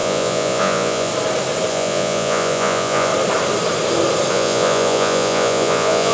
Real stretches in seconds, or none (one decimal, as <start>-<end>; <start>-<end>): 1.1-1.7; 3.1-4.3